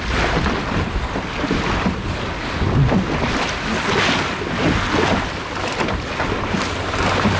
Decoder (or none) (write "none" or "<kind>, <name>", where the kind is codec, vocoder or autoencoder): none